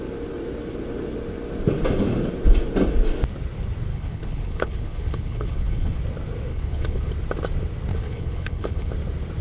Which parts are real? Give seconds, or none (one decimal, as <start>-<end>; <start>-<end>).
0.0-3.9; 6.0-6.5; 7.1-7.9; 8.9-9.4